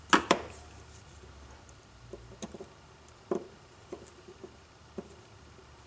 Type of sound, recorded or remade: recorded